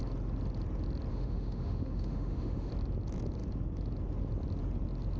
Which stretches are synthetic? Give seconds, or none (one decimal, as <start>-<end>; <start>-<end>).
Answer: 1.1-2.7